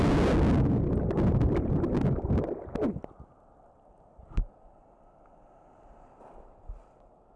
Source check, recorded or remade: recorded